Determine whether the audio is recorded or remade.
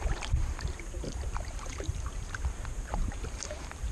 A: remade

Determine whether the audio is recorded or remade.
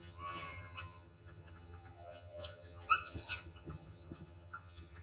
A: remade